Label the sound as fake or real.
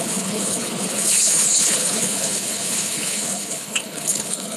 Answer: fake